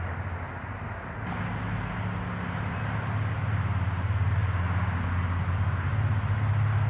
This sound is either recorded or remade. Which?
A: recorded